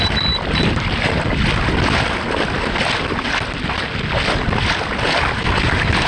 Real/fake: real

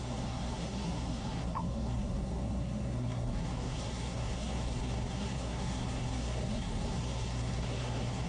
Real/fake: fake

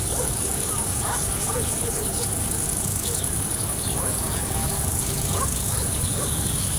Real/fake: fake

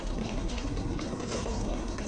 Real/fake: fake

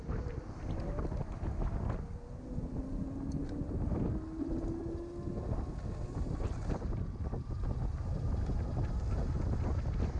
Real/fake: real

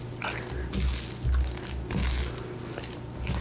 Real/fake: real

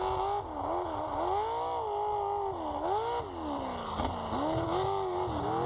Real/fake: real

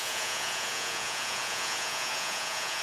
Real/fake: fake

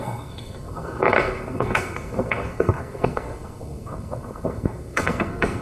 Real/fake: fake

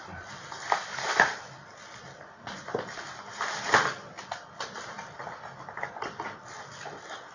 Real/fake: real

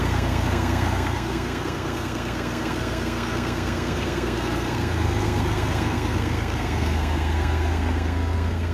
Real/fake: fake